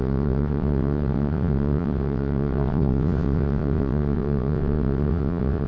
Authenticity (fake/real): fake